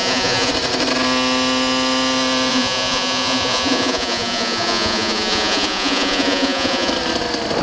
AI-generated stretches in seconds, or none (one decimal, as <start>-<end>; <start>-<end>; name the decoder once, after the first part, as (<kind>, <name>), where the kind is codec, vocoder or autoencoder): 0.0-0.5 (vocoder, Vocos); 2.5-6.9